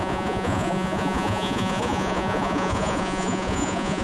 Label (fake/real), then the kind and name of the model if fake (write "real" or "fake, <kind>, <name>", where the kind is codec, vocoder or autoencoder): fake, vocoder, Vocos